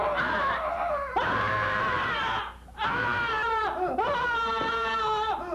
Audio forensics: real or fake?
fake